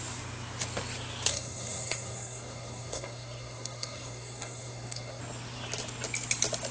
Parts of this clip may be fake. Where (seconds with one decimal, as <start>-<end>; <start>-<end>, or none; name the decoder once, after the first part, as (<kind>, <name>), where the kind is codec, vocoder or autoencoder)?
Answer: 1.3-5.2 (codec, SNAC)